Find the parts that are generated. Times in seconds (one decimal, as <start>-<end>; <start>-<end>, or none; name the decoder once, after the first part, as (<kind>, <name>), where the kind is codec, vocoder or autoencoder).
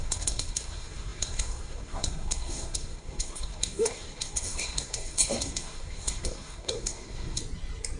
0.0-7.4 (codec, SNAC)